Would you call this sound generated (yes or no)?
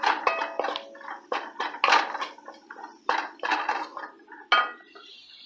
no